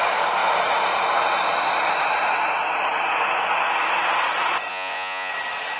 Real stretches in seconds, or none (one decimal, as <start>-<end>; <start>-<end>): 0.0-4.7; 5.3-5.8